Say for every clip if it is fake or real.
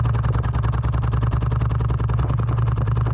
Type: real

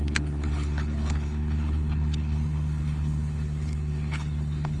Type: fake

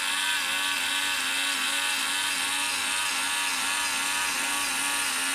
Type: real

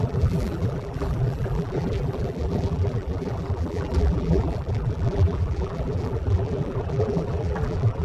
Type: fake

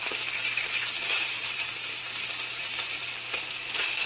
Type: fake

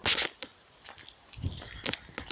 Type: real